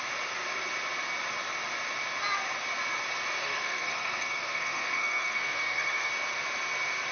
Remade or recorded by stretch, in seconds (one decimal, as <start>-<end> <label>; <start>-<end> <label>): 0.0-3.4 recorded; 3.4-6.1 remade; 6.1-7.1 recorded